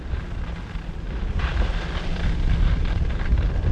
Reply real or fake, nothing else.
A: real